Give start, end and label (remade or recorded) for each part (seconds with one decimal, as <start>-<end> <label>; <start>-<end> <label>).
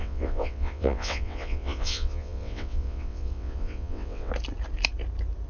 0.0-4.3 remade; 4.3-5.5 recorded